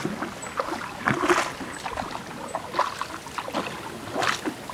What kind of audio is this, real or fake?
real